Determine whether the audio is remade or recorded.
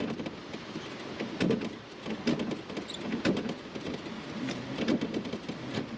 recorded